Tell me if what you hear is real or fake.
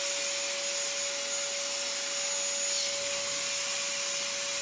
real